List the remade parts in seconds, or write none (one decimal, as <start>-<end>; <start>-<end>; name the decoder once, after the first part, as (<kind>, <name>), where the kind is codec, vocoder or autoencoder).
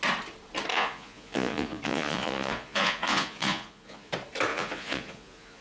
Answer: 0.7-4.1 (vocoder, Vocos); 4.5-5.6